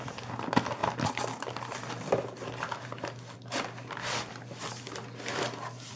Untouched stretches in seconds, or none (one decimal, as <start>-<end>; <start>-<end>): 0.0-6.0

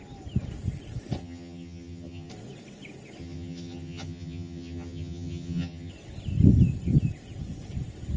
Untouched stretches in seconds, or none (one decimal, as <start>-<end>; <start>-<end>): 0.0-1.2; 2.3-3.2; 5.9-8.2

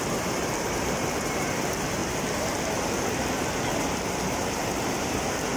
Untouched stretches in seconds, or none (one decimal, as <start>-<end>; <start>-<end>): 2.0-3.6

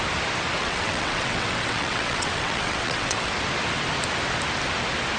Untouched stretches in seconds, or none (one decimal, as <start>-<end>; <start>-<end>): 0.0-0.6; 3.3-5.2

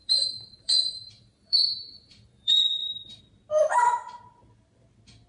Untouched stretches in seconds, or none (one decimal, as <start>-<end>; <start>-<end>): 3.2-5.3

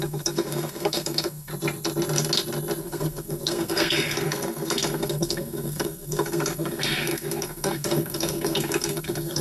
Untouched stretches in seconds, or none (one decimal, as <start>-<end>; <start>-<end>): 1.5-2.8

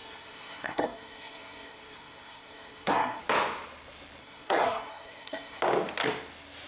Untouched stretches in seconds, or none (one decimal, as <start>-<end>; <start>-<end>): 3.2-4.2; 5.6-6.7